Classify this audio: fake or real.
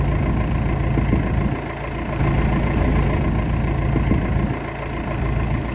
real